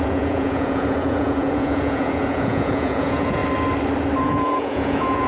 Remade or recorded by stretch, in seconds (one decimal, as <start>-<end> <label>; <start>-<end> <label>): 0.0-3.4 remade; 3.4-4.2 recorded; 4.2-5.3 remade